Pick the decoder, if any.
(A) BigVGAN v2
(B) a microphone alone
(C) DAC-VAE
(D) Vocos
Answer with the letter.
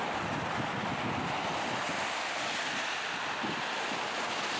B